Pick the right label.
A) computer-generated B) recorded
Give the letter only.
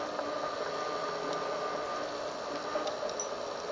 B